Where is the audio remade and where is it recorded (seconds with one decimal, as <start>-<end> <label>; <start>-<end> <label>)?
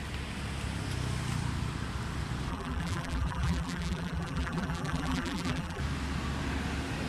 0.0-2.5 recorded; 2.5-5.8 remade; 5.8-7.1 recorded